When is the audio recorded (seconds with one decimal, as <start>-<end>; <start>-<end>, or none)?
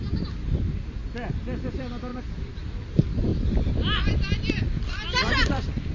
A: 1.0-1.7; 3.3-4.5